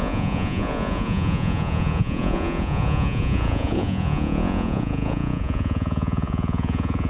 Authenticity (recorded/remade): remade